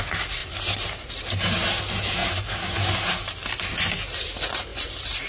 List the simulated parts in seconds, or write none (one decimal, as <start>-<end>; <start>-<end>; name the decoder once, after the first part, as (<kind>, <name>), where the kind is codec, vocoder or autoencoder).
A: 2.2-3.0 (vocoder, BigVGAN v2); 4.7-5.3